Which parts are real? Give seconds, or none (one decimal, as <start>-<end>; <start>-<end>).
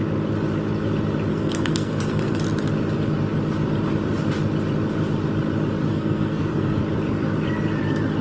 0.0-1.3; 2.4-5.9; 6.8-8.2